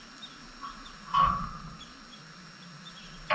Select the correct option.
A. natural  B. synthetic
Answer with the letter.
A